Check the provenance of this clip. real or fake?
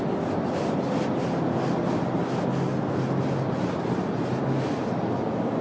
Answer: real